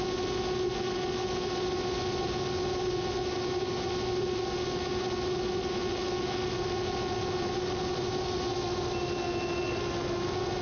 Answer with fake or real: real